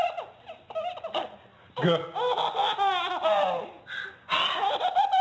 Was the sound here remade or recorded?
recorded